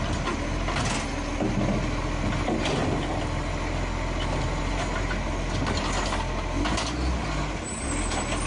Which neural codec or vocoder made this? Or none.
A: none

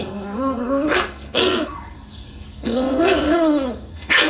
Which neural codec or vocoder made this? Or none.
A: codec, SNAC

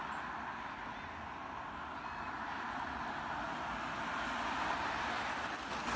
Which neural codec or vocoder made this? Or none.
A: none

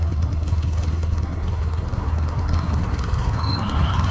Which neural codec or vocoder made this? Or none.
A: codec, SNAC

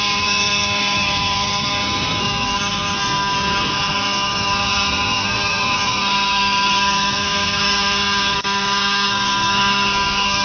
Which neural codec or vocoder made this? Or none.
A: codec, SNAC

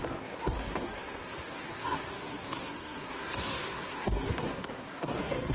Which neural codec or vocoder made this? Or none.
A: codec, SNAC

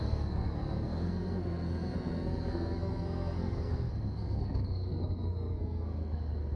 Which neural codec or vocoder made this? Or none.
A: codec, SNAC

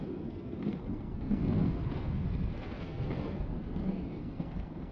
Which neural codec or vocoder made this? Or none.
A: codec, SNAC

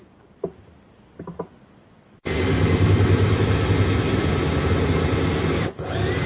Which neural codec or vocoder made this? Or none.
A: none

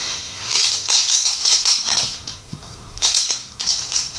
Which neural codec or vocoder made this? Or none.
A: codec, SNAC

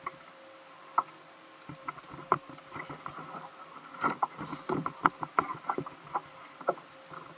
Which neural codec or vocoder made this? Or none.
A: none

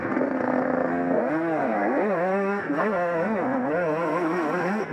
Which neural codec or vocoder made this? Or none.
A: codec, SNAC